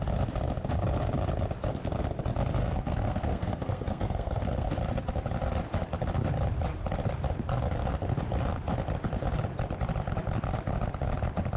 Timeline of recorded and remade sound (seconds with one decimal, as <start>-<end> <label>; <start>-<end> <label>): 0.0-2.6 recorded; 2.6-4.7 remade; 4.7-11.6 recorded